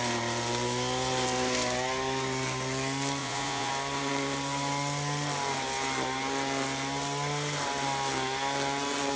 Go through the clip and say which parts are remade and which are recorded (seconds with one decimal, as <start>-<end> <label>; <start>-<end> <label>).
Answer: 0.0-3.2 recorded; 3.2-3.7 remade; 3.7-9.2 recorded